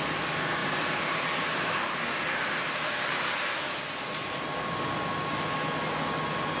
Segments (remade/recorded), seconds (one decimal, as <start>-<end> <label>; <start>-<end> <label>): 0.0-0.6 recorded; 0.6-3.8 remade; 3.8-6.6 recorded